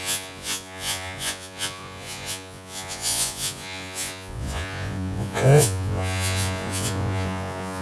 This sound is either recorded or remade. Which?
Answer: remade